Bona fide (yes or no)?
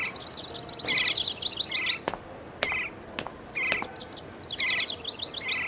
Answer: yes